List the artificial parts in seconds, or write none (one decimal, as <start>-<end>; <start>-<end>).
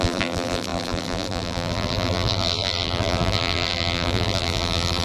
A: 0.0-5.0